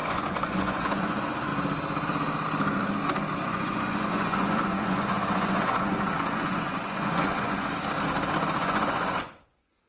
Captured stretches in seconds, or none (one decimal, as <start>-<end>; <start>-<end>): 1.5-3.4; 7.7-8.6